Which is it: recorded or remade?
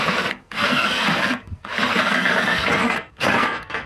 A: remade